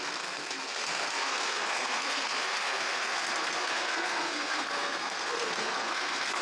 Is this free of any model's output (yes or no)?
no